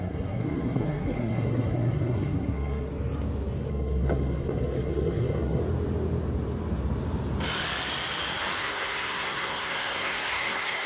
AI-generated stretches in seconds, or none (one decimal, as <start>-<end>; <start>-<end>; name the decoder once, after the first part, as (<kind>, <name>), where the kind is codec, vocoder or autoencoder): 0.0-2.9 (codec, SNAC); 3.7-5.6; 8.6-10.9